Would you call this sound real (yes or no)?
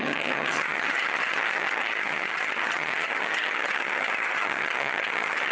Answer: no